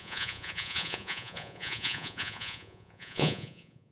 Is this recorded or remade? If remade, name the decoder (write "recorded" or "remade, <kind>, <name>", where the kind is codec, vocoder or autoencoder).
remade, vocoder, Vocos